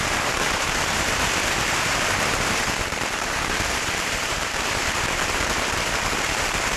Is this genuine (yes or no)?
no